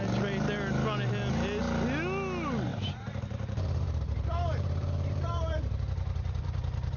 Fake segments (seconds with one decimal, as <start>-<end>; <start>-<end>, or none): 2.7-7.0